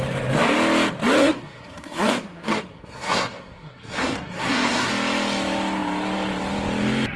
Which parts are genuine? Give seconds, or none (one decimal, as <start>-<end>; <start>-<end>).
0.0-1.2; 4.9-7.2